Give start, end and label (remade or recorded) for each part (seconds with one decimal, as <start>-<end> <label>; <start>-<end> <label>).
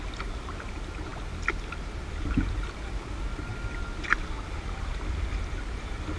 0.0-6.2 recorded